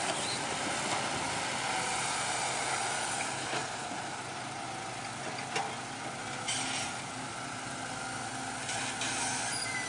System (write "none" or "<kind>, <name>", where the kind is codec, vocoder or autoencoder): none